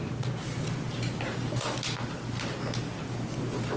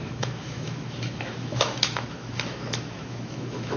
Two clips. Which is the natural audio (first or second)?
first